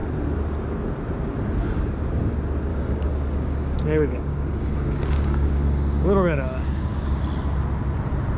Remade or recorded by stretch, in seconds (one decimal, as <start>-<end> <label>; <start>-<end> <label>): 0.0-2.7 recorded; 2.7-7.2 remade; 7.2-8.4 recorded